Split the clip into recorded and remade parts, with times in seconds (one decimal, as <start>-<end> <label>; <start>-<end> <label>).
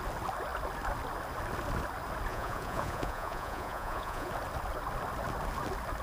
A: 0.0-2.3 recorded; 2.3-4.3 remade; 4.3-6.0 recorded